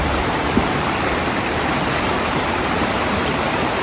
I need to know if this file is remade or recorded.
remade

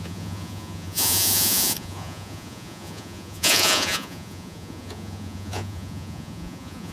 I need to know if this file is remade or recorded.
remade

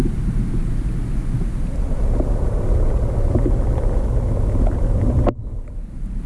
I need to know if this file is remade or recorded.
recorded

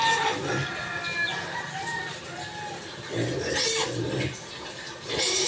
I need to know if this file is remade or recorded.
recorded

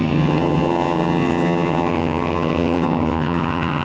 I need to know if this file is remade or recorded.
remade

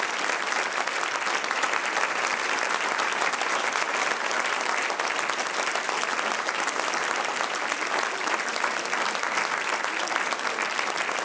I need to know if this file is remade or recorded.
recorded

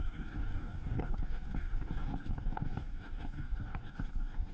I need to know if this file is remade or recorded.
remade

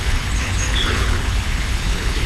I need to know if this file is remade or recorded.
remade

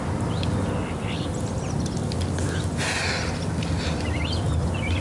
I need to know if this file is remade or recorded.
recorded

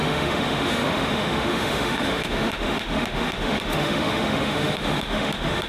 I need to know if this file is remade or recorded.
remade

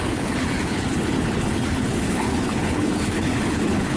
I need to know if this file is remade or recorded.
remade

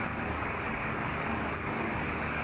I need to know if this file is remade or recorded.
remade